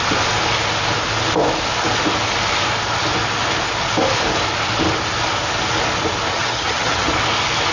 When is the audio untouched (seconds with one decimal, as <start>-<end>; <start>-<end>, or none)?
0.0-6.3; 7.1-7.7